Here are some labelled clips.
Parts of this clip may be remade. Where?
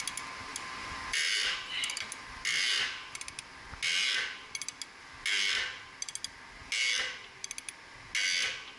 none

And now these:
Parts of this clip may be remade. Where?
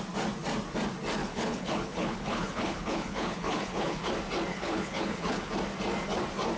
1.2-4.1 (codec, HILCodec); 4.5-5.5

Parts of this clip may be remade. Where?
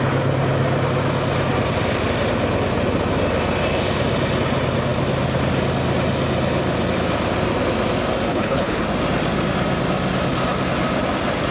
8.3-8.8 (codec, HILCodec)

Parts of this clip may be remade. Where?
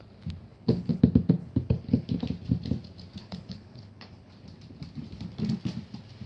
0.5-1.0 (codec, HILCodec); 1.4-2.2; 3.2-4.3